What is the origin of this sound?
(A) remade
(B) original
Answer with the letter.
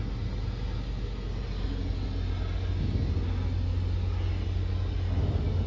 B